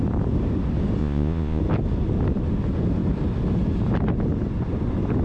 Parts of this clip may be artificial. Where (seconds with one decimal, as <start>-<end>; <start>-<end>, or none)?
1.0-1.6